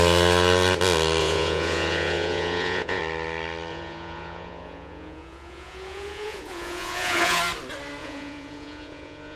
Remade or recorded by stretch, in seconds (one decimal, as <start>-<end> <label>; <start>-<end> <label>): 0.0-1.2 recorded; 1.2-3.0 remade; 3.0-3.7 recorded; 3.7-7.4 remade; 7.4-8.0 recorded; 8.0-9.4 remade